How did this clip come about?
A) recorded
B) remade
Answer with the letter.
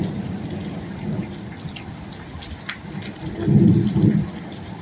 A